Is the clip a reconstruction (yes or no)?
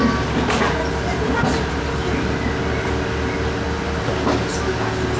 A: no